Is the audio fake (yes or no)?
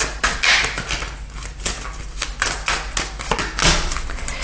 no